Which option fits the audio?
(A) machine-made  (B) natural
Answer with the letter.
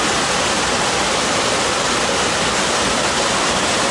B